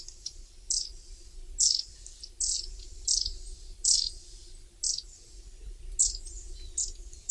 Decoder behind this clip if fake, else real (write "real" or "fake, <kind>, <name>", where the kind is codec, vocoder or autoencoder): real